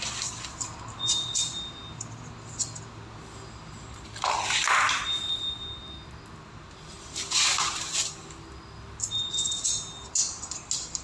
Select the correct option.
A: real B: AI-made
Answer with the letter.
A